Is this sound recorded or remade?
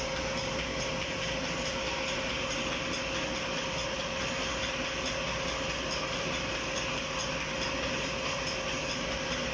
recorded